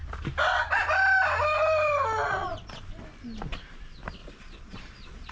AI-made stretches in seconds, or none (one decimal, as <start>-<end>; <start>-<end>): 2.2-2.8; 4.2-5.3